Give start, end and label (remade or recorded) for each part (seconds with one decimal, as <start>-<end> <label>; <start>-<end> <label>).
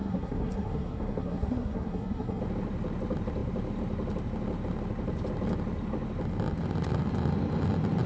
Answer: 0.0-2.4 remade; 2.4-8.1 recorded